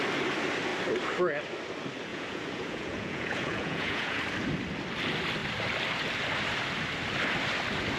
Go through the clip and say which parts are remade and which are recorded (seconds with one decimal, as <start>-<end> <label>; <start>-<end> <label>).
0.0-2.1 recorded; 2.1-4.2 remade; 4.2-8.0 recorded